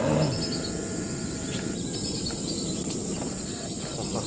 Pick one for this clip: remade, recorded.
recorded